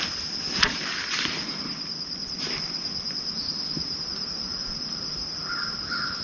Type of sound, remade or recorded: recorded